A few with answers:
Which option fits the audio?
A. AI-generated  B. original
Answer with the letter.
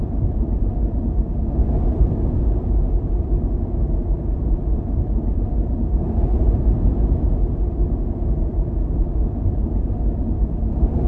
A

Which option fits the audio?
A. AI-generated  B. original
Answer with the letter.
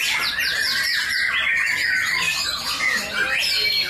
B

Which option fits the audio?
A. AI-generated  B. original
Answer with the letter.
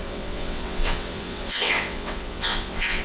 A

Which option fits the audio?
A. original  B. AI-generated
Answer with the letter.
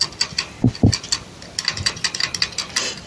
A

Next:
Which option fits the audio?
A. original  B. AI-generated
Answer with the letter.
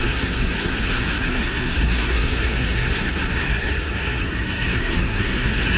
B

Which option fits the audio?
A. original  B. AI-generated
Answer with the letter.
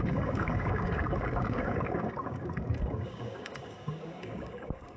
B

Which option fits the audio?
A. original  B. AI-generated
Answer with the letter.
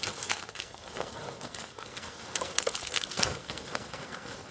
B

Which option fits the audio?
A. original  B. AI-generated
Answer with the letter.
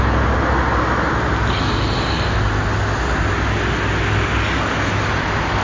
A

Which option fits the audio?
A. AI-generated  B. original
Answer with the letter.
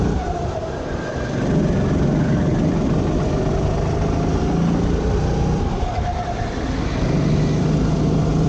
B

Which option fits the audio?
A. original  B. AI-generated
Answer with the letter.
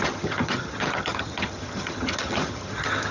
B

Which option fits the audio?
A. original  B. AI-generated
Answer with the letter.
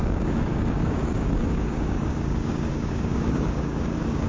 B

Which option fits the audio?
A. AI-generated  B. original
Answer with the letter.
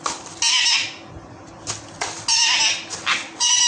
B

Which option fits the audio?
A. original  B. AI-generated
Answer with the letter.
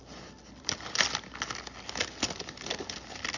A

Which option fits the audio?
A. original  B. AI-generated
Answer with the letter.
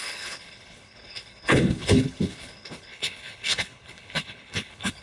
B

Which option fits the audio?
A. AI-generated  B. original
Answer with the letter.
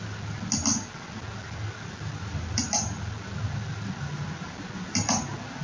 B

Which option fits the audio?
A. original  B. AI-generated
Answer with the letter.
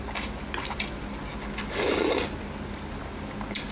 A